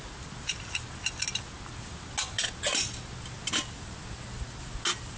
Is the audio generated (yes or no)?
no